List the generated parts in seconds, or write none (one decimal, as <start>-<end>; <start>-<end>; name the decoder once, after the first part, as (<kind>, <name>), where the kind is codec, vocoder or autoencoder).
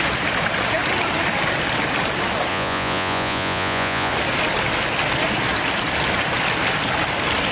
2.5-4.1 (vocoder, Vocos)